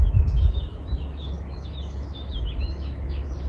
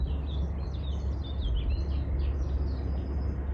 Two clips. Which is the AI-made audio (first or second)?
first